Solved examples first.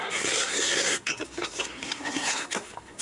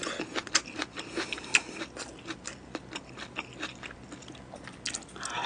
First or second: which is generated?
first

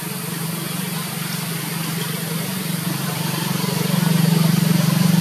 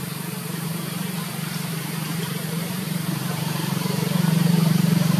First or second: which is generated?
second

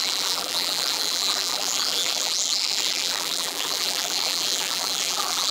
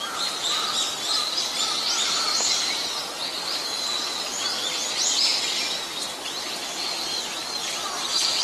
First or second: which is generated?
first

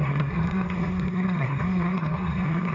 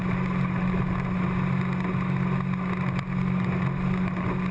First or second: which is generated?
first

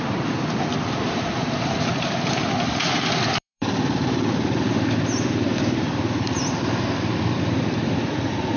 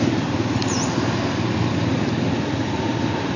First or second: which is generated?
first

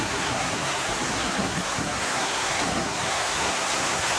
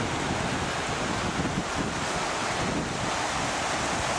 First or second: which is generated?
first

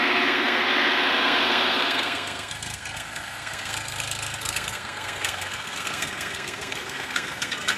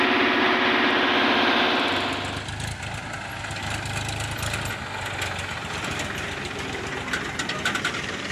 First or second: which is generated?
first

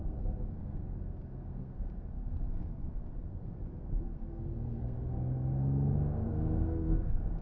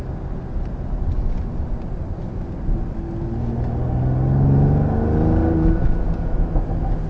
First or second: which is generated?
first